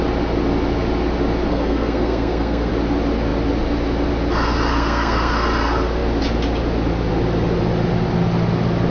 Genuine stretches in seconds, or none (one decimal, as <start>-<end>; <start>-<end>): 0.0-1.5; 2.7-4.7; 5.3-8.9